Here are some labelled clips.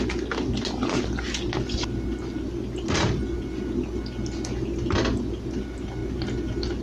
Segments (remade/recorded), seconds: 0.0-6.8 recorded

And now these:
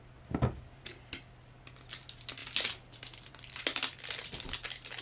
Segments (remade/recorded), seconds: 0.0-5.0 recorded

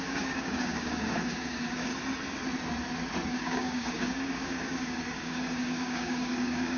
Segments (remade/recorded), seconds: 0.0-1.9 remade; 1.9-3.3 recorded; 3.3-6.8 remade

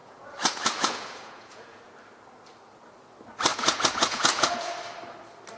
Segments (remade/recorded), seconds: 0.0-1.9 remade; 1.9-3.5 recorded; 3.5-4.7 remade; 4.7-5.6 recorded